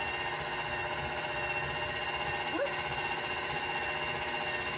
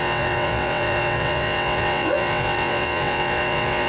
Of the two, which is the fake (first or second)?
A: second